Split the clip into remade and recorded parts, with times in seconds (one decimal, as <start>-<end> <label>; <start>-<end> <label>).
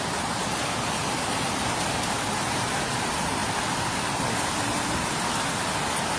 0.0-6.2 recorded